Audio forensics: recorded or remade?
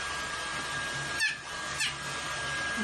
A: recorded